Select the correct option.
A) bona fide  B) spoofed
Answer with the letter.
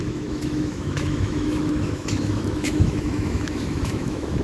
B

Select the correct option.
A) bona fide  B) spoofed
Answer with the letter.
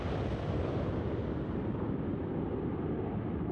A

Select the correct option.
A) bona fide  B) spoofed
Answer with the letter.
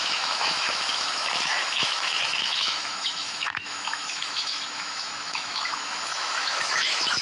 B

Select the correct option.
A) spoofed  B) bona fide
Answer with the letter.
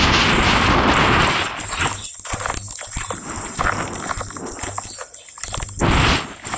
B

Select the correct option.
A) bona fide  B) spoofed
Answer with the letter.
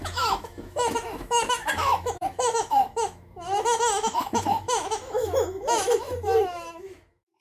B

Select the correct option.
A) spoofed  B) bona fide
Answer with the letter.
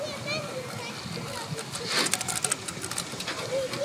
B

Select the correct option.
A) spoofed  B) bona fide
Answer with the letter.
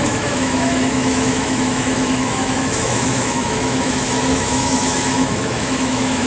A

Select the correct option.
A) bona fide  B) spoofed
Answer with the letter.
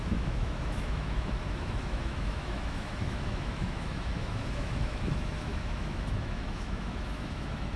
B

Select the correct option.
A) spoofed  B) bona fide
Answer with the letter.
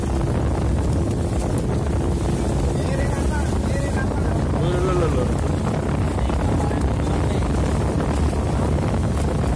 B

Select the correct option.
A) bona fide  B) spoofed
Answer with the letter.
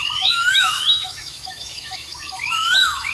B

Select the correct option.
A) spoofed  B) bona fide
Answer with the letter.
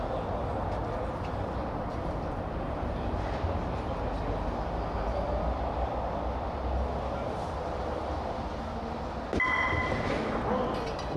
B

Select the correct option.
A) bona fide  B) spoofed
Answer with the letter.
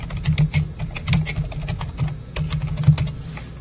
A